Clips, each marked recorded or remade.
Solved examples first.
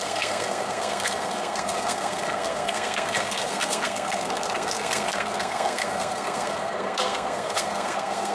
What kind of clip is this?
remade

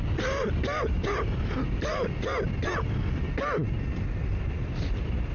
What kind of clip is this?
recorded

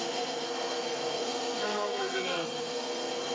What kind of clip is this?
remade